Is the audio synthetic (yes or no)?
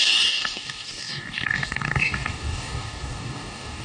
yes